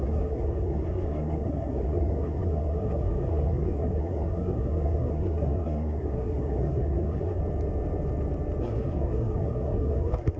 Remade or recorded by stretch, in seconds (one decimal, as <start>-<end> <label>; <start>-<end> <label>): 0.0-7.4 remade; 7.4-8.6 recorded; 8.6-10.4 remade